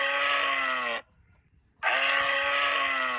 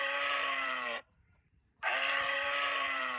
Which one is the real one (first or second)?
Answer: first